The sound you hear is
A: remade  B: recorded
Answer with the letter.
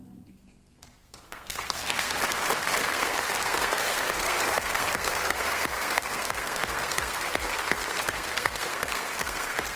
A